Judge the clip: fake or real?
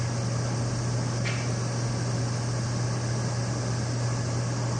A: real